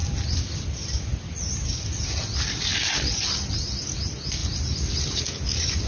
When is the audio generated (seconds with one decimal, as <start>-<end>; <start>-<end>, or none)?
none